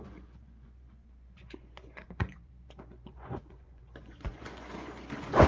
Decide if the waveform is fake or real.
fake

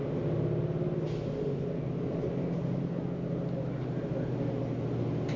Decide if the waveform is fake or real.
real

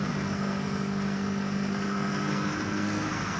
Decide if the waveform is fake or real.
fake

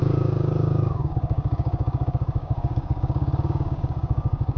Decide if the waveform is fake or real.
fake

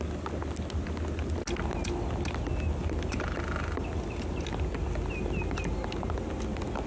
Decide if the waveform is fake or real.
real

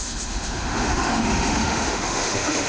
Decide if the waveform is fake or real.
fake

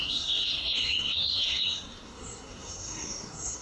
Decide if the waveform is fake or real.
fake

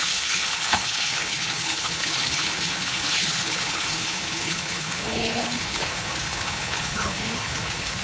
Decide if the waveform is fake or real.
fake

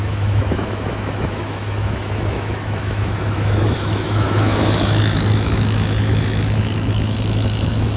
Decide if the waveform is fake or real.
fake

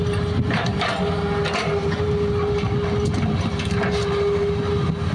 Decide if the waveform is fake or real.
real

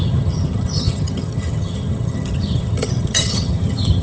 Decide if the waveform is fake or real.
fake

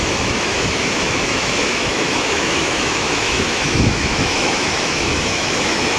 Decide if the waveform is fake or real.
fake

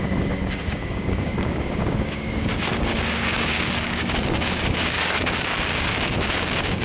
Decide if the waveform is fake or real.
fake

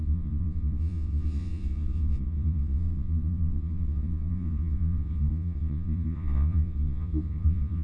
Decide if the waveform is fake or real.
fake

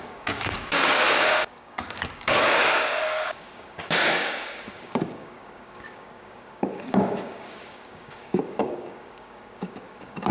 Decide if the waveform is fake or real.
fake